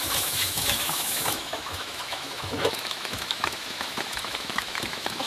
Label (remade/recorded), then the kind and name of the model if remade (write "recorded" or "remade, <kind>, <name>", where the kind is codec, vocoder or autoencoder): remade, autoencoder, DAC-VAE